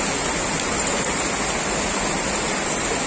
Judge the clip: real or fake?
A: real